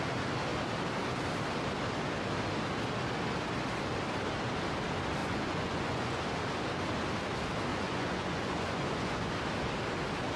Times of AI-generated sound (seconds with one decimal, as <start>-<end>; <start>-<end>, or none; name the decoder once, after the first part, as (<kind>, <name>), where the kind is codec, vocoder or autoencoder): 5.2-6.2 (vocoder, Vocos); 7.7-9.3